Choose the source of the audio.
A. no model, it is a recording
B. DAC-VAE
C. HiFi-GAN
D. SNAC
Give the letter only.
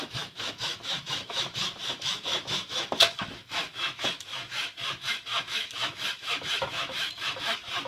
B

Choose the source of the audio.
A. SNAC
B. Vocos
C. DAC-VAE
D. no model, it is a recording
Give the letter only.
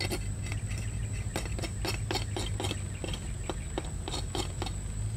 D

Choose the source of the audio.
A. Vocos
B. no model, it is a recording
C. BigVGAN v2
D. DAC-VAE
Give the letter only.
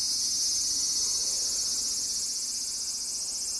B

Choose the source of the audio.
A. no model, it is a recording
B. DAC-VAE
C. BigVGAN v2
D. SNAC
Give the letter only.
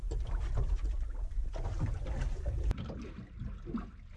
A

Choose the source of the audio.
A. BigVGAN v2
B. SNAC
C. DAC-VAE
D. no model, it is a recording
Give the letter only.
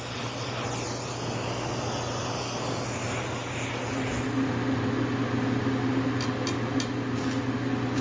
D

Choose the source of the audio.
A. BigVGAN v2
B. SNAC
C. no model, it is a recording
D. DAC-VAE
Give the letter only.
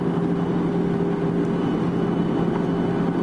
C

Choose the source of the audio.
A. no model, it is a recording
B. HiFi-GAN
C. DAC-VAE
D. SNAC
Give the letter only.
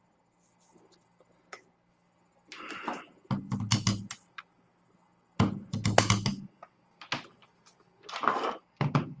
A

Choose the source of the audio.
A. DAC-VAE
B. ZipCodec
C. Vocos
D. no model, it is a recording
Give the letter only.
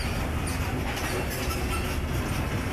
D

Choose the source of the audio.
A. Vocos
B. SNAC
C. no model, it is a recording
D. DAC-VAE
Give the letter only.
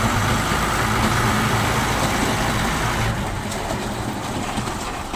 C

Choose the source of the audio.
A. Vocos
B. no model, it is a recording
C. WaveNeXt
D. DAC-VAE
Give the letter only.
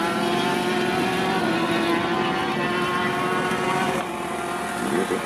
B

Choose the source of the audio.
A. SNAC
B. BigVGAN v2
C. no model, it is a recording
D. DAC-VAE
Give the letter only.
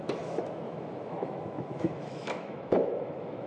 D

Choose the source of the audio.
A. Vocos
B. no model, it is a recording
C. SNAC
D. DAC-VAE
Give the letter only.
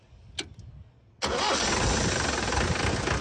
B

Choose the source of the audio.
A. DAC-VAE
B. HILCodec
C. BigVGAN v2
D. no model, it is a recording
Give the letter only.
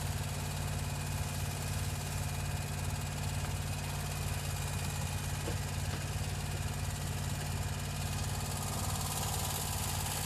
D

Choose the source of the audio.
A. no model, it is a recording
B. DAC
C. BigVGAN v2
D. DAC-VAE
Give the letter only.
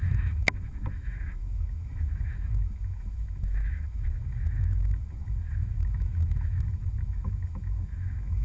D